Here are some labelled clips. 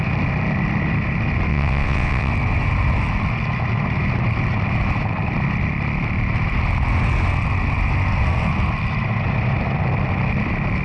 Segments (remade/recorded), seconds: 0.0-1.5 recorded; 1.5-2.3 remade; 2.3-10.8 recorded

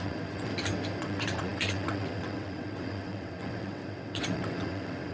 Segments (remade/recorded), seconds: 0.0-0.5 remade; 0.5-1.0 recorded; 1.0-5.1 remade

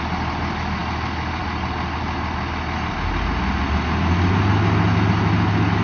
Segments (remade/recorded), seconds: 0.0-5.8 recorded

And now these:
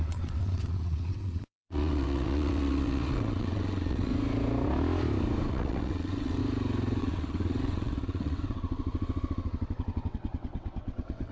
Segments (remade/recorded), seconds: 0.0-4.1 remade; 4.1-5.5 recorded; 5.5-6.4 remade; 6.4-7.0 recorded; 7.0-11.3 remade

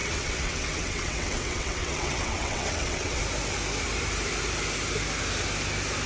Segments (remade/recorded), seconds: 0.0-3.2 remade; 3.2-6.1 recorded

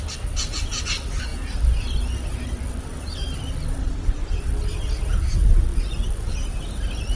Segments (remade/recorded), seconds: 0.0-3.8 recorded; 3.8-4.4 remade; 4.4-7.2 recorded